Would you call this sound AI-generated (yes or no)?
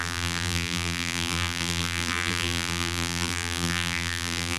yes